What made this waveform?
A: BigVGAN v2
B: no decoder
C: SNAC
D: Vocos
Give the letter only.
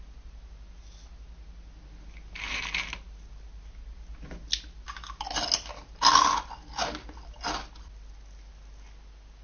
B